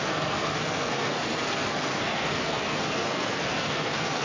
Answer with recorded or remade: remade